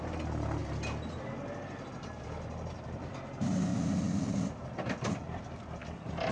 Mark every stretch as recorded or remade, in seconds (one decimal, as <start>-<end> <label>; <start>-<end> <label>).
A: 0.0-6.3 recorded